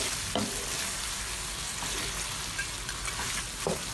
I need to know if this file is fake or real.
real